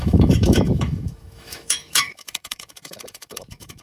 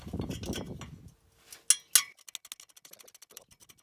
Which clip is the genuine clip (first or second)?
second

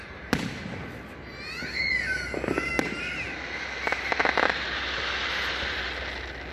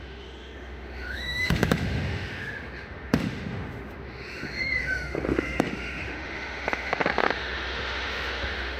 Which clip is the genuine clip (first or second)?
first